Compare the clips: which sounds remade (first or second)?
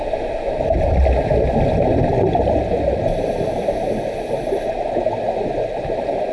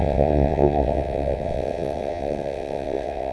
second